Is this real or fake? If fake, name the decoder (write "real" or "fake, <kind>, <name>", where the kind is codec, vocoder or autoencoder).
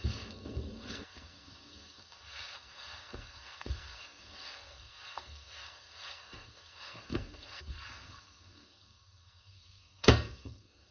fake, codec, SNAC